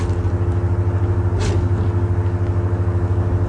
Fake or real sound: real